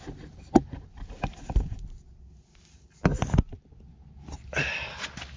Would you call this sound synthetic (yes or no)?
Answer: no